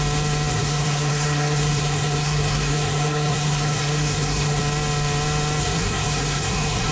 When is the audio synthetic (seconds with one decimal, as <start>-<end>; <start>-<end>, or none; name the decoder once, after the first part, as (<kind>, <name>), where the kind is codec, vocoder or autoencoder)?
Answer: 0.5-4.6 (codec, SNAC); 5.6-6.9